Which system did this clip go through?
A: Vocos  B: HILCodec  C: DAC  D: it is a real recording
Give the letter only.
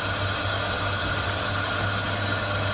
D